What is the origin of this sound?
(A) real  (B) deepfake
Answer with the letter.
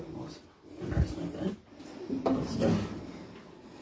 A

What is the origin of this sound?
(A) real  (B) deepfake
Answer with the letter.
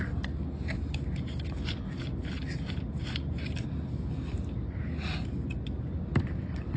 A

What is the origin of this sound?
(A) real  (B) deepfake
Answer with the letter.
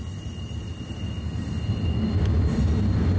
A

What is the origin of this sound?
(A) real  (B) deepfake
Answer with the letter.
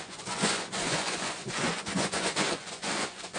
B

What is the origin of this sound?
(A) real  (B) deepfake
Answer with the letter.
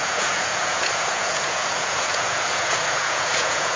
B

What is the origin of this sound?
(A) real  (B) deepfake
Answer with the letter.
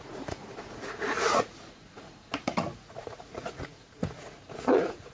B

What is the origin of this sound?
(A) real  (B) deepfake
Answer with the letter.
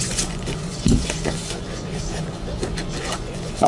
B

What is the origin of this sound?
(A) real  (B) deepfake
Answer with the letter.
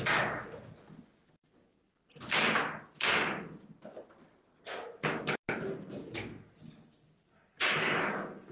A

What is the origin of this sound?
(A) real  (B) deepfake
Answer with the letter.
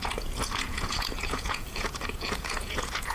B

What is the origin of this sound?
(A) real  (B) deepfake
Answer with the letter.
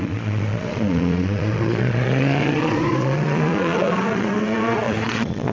B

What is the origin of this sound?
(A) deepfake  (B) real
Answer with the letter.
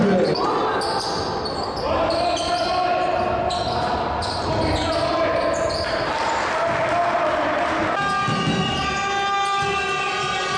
B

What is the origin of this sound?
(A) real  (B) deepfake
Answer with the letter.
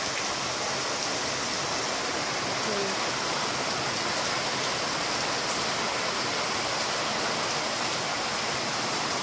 A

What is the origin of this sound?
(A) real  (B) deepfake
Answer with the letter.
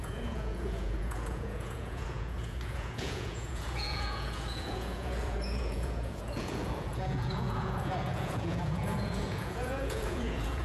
B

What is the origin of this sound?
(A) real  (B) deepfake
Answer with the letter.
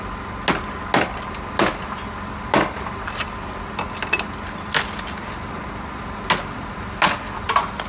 A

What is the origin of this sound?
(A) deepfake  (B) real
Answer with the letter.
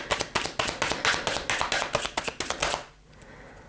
B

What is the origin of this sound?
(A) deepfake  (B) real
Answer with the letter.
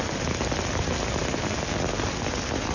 B